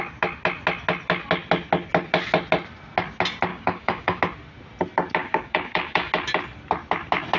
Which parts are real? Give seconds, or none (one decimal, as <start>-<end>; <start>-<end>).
0.0-3.5; 4.2-5.2; 6.1-7.4